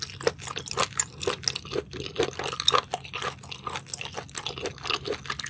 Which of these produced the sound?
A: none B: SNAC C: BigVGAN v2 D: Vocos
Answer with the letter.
A